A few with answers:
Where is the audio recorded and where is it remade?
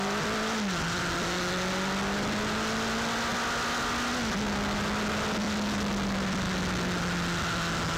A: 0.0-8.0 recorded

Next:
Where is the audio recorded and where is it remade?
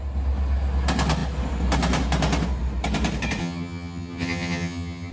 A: 0.0-3.4 recorded; 3.4-5.1 remade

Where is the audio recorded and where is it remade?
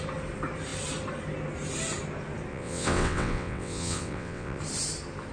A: 0.0-2.5 recorded; 2.5-4.6 remade; 4.6-5.3 recorded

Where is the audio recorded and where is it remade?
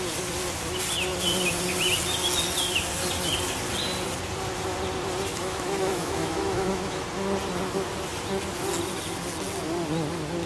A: 0.0-5.3 recorded; 5.3-7.0 remade; 7.0-10.5 recorded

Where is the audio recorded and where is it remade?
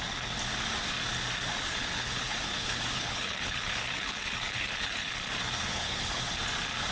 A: 0.0-1.6 recorded; 1.6-5.1 remade; 5.1-5.7 recorded; 5.7-6.2 remade; 6.2-6.9 recorded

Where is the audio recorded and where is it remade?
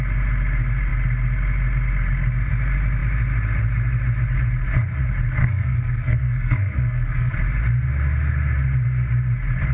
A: 0.0-5.4 recorded; 5.4-7.3 remade; 7.3-9.7 recorded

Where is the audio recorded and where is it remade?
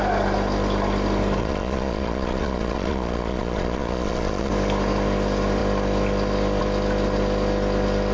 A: 0.0-1.4 recorded; 1.4-4.5 remade; 4.5-8.1 recorded